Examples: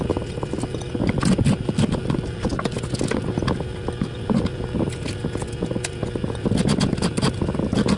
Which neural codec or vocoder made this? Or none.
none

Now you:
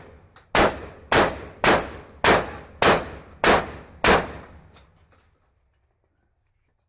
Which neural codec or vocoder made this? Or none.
none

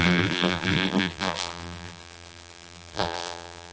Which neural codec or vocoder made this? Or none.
vocoder, BigVGAN v2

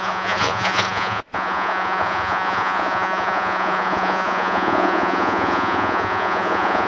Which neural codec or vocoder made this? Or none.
vocoder, Vocos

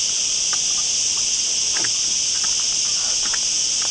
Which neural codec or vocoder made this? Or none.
none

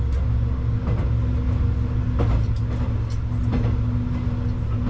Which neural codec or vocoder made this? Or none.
none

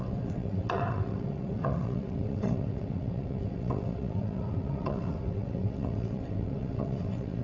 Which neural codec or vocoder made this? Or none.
vocoder, WaveNeXt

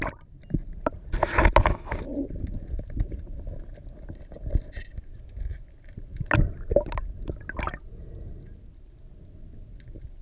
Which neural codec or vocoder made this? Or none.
none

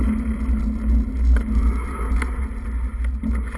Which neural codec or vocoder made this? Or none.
none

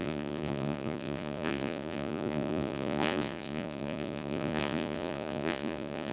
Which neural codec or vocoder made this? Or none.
vocoder, Vocos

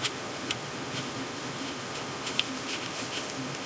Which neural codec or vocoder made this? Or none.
autoencoder, DAC-VAE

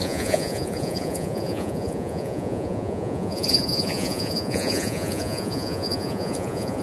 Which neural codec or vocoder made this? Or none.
vocoder, Vocos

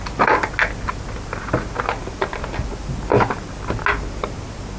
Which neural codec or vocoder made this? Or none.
none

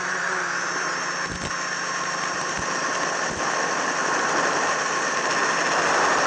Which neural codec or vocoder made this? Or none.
none